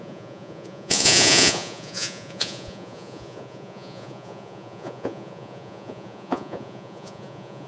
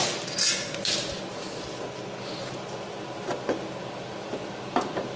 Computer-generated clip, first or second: first